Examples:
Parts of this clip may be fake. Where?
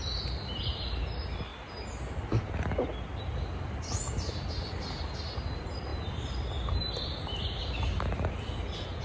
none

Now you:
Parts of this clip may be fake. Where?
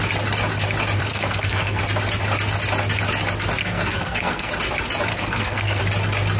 1.1-1.8 (codec, SNAC); 3.6-4.5; 5.1-5.8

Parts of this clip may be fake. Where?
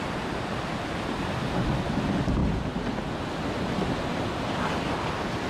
none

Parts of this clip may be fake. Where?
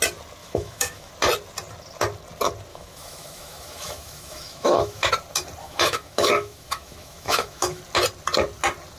0.4-1.1 (autoencoder, DAC-VAE); 2.7-5.1; 5.6-7.8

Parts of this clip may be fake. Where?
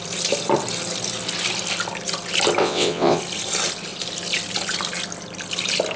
2.6-3.2 (vocoder, WaveNeXt)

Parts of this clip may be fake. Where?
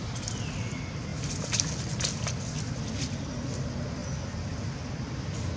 none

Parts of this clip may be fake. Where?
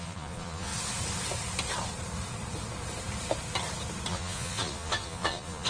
0.0-0.7 (vocoder, Vocos); 4.1-5.7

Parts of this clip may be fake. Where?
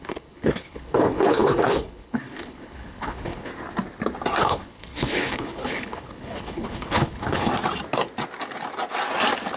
0.0-3.5 (codec, HILCodec); 4.4-7.5